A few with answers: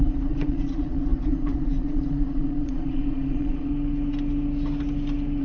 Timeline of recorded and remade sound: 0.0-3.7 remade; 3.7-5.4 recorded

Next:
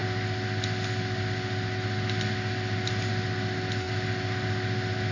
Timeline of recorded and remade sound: 0.0-5.1 recorded

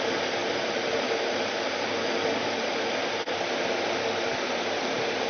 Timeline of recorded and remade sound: 0.0-5.3 recorded